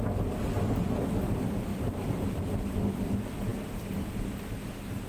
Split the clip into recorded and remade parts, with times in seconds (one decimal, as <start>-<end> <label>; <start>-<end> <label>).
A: 0.0-5.1 recorded